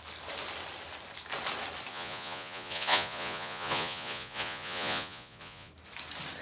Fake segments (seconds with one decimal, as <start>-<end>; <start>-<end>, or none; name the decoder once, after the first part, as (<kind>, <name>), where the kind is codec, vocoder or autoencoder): 1.9-5.7 (vocoder, Vocos)